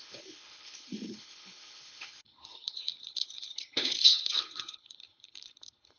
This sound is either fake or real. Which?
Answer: fake